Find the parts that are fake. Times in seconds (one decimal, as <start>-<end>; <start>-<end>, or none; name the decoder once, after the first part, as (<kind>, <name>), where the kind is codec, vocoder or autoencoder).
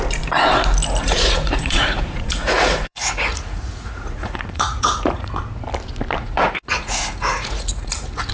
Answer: 1.0-5.4 (vocoder, Vocos); 6.2-8.3